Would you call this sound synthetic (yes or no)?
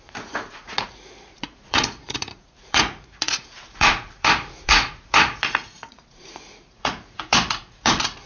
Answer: yes